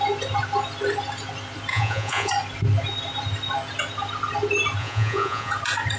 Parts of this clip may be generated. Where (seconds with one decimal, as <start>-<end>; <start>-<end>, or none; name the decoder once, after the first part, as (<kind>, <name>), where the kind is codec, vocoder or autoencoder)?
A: 1.7-2.3 (vocoder, Vocos); 4.8-5.5